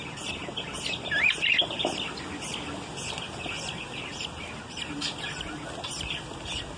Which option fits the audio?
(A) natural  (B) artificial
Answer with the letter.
A